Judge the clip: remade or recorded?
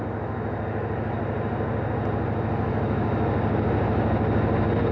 recorded